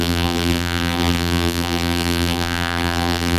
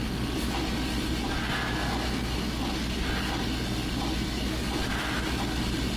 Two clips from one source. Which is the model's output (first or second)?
first